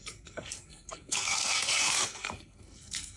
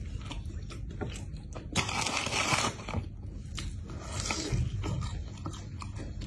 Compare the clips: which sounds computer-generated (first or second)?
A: first